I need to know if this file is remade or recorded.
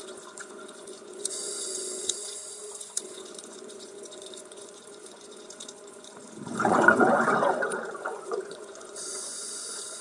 remade